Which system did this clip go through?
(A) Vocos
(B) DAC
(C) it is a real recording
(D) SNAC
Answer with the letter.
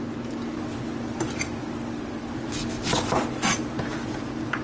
C